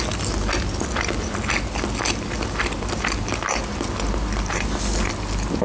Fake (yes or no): no